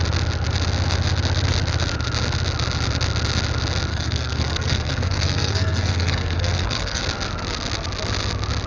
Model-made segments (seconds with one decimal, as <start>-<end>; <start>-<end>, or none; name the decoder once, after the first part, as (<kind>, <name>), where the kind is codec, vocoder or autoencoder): 3.9-7.0 (codec, SNAC)